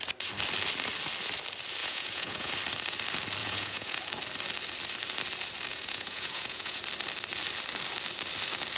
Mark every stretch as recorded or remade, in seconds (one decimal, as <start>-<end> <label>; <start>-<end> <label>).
0.0-1.8 recorded; 1.8-2.5 remade; 2.5-3.4 recorded; 3.4-4.0 remade; 4.0-5.7 recorded; 5.7-6.8 remade; 6.8-8.8 recorded